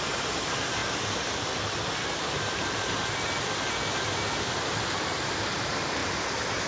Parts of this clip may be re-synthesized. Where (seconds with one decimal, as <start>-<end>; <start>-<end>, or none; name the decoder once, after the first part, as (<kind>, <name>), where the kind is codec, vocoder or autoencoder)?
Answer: 0.0-0.8 (vocoder, BigVGAN v2); 4.8-6.7

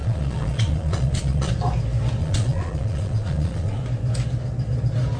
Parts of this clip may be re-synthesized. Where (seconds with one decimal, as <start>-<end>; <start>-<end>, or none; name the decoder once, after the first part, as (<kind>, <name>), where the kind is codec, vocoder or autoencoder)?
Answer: 0.0-1.5 (vocoder, Vocos); 2.2-3.8

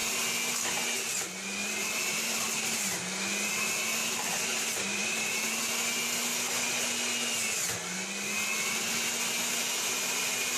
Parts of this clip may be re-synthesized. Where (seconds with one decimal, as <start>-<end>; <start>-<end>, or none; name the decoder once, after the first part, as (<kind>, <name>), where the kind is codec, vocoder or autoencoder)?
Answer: 1.6-2.8 (vocoder, BigVGAN v2); 4.0-5.5

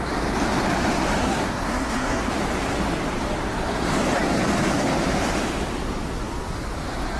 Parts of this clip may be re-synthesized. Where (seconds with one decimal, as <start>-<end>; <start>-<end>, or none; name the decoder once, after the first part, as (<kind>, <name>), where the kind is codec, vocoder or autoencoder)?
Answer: 1.2-2.3 (codec, SNAC)

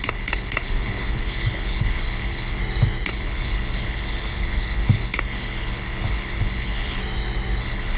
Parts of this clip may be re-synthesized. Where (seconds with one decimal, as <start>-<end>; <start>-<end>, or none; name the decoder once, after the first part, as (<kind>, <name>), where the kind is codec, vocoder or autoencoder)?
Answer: 0.0-2.6 (codec, HILCodec); 3.1-7.0; 7.6-8.0

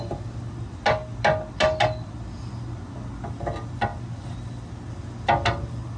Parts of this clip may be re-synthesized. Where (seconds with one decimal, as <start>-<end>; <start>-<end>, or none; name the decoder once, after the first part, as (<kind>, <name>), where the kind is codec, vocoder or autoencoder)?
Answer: none

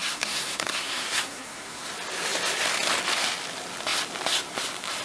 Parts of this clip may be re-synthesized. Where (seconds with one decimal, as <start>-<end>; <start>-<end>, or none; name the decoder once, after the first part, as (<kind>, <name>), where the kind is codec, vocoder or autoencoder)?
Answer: 0.0-1.9 (codec, SNAC)

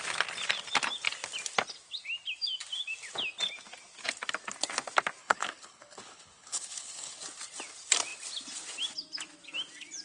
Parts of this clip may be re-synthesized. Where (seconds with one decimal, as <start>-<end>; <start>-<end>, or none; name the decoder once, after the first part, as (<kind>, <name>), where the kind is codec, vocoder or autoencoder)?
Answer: 5.2-7.2 (codec, HILCodec)